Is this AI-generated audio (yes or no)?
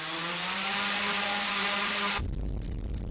yes